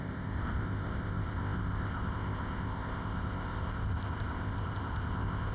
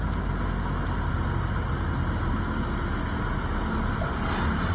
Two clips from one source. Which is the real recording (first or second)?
second